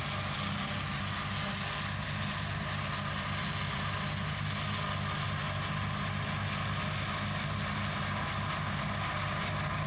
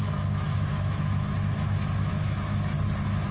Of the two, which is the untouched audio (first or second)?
first